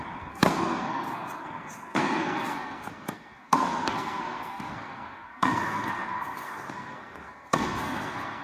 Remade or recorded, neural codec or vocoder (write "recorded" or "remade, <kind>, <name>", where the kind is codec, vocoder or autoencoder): remade, codec, SNAC